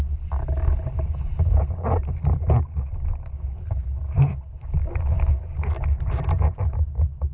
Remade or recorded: recorded